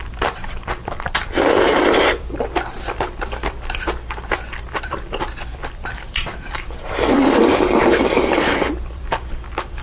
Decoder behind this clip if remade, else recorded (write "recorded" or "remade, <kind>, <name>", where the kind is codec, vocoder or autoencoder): remade, vocoder, BigVGAN v2